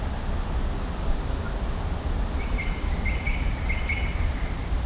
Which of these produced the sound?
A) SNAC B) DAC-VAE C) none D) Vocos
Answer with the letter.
C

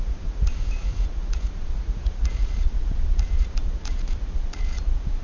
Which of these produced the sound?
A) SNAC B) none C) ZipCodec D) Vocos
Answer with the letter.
D